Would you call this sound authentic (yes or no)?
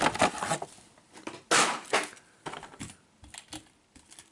yes